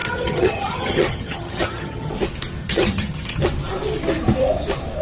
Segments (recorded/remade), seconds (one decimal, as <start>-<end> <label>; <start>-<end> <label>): 0.0-2.1 remade; 2.1-2.6 recorded; 2.6-3.4 remade; 3.4-5.0 recorded